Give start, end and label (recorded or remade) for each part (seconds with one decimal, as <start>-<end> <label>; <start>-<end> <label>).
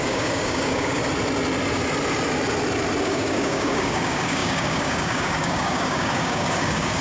0.0-1.0 remade; 1.0-3.0 recorded; 3.0-7.0 remade